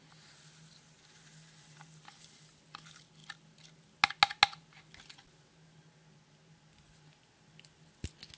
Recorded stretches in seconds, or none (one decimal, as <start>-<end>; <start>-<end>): 0.0-8.4